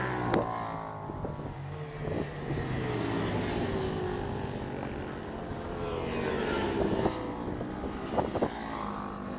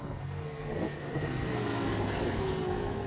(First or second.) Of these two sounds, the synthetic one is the second